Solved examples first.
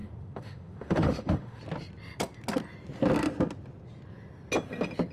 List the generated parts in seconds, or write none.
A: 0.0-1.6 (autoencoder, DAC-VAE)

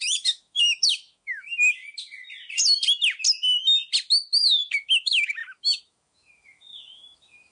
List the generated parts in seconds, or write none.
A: 0.0-1.8 (autoencoder, DAC-VAE); 4.7-7.5